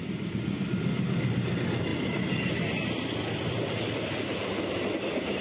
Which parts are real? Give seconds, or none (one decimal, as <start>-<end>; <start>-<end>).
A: 0.0-5.4

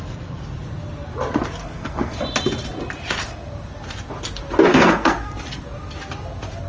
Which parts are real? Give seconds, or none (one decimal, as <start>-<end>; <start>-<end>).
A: 0.0-1.6; 2.2-4.7; 5.3-6.7